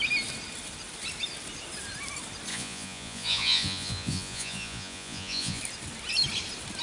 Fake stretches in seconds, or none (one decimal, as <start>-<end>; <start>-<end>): 2.5-5.6